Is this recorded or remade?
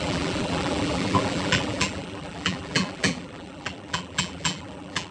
remade